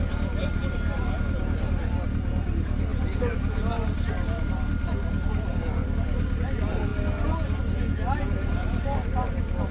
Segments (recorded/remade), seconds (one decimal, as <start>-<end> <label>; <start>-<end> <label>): 0.0-9.7 recorded